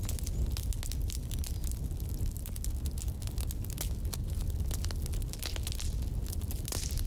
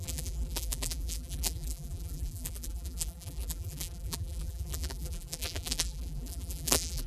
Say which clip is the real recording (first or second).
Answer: first